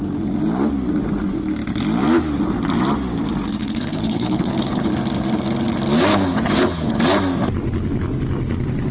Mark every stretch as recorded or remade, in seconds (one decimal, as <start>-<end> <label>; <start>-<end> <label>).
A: 0.0-3.6 recorded; 3.6-4.9 remade; 4.9-6.1 recorded; 6.1-7.0 remade; 7.0-8.9 recorded

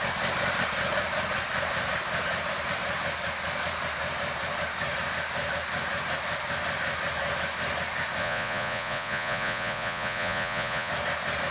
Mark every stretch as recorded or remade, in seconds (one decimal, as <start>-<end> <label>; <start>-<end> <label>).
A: 0.0-8.2 recorded; 8.2-10.9 remade; 10.9-11.5 recorded

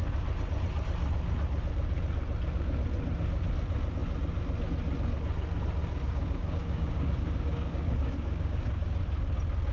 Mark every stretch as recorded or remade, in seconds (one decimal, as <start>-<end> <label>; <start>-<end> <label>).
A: 0.0-5.8 recorded; 5.8-9.0 remade; 9.0-9.7 recorded